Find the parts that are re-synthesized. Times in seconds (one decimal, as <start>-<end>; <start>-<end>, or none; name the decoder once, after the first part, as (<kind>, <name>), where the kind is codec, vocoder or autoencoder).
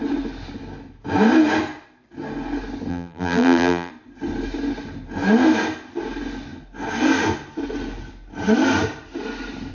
2.9-3.9 (vocoder, BigVGAN v2)